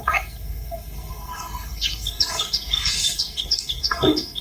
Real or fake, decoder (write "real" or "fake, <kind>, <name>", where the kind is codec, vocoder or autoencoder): fake, codec, SNAC